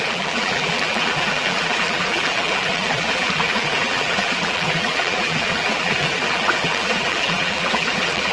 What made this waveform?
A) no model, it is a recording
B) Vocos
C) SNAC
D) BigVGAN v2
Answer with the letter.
D